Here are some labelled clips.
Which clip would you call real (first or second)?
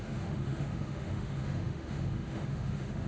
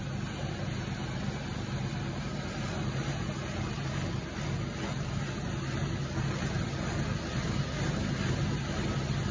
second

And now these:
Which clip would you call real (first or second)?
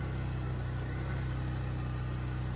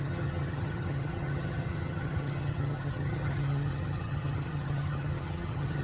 first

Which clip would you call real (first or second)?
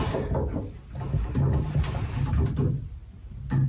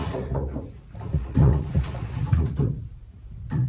first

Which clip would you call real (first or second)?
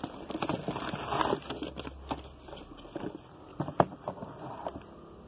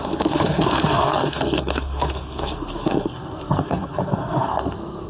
first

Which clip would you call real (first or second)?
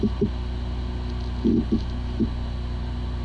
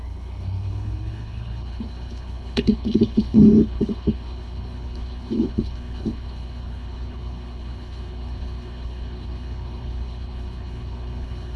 first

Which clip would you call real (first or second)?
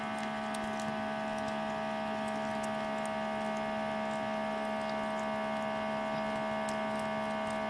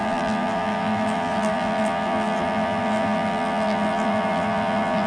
first